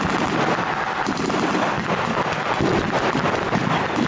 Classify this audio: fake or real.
real